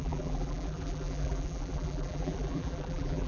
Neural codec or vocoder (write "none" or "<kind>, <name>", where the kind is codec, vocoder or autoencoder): vocoder, BigVGAN v2